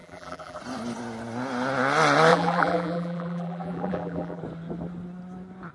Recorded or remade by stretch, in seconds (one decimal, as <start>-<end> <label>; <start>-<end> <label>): 0.0-0.6 remade; 0.6-2.3 recorded; 2.3-4.4 remade; 4.4-5.7 recorded